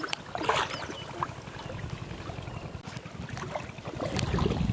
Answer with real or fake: real